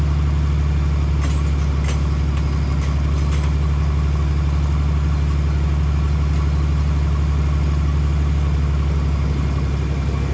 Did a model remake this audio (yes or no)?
no